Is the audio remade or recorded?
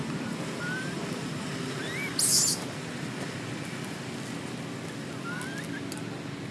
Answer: recorded